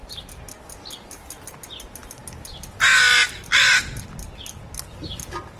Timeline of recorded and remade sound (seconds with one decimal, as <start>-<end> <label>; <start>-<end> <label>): 0.0-5.6 recorded